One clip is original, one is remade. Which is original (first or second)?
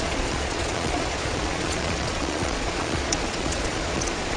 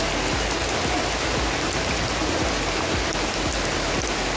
second